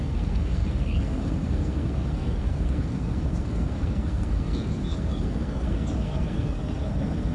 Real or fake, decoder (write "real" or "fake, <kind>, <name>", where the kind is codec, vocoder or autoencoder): fake, codec, SNAC